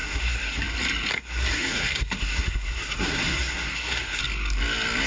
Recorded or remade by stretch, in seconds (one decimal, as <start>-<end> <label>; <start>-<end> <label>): 0.0-0.6 remade; 0.6-1.1 recorded; 1.1-4.2 remade; 4.2-5.1 recorded